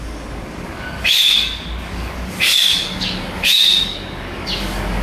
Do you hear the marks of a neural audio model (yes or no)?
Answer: yes